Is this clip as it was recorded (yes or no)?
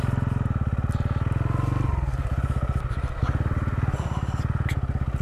yes